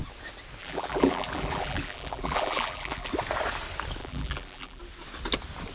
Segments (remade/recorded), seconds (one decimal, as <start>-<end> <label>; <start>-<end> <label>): 0.0-0.6 recorded; 0.6-3.1 remade; 3.1-4.0 recorded; 4.0-4.8 remade; 4.8-5.7 recorded